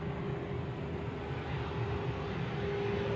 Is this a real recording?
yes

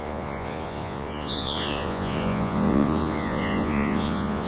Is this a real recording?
no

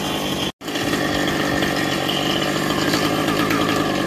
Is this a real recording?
yes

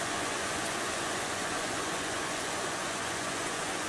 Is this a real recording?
no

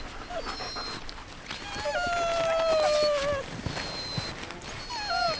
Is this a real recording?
yes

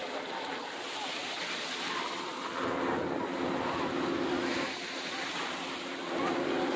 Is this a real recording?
yes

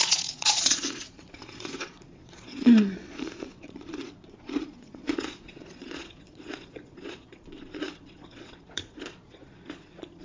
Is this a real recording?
no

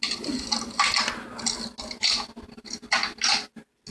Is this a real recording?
yes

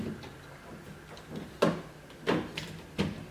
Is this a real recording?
yes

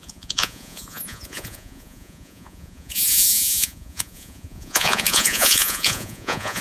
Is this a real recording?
no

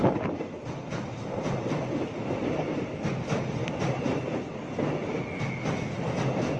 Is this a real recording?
yes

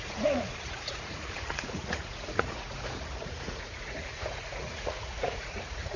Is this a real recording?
no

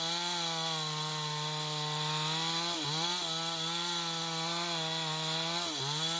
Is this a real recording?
yes